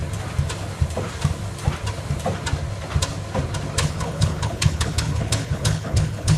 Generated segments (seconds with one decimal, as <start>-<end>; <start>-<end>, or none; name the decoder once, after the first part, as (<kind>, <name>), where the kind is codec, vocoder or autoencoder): 3.8-6.4 (codec, HILCodec)

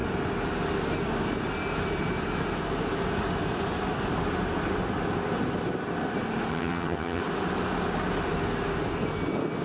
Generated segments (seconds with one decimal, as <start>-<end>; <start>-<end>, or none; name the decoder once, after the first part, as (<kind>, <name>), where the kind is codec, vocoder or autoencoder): 6.5-7.2 (vocoder, HiFi-GAN)